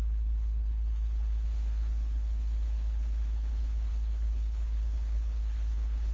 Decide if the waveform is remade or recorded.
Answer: remade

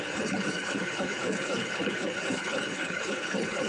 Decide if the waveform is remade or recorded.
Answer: remade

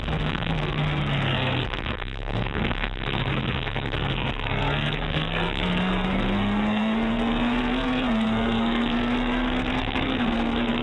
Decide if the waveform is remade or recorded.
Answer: remade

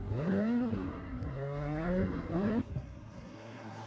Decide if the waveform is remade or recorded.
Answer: remade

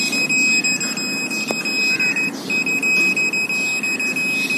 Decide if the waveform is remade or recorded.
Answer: recorded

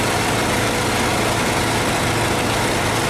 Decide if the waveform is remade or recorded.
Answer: recorded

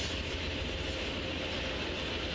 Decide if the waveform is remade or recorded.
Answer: recorded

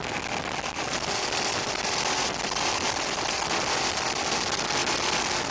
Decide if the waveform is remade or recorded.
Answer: recorded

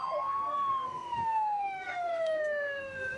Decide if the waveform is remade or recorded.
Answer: remade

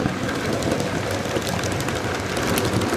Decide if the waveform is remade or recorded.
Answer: recorded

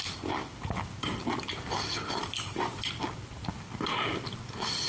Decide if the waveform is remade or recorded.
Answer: recorded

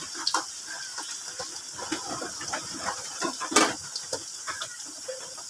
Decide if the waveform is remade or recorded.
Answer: recorded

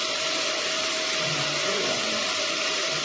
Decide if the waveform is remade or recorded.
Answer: remade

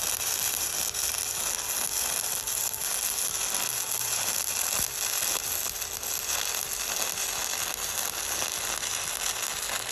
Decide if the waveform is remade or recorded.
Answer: recorded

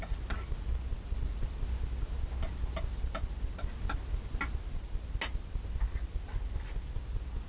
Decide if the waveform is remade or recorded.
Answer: recorded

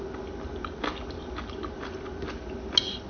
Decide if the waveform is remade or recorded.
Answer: recorded